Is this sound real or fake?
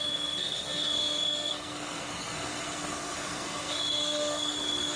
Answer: fake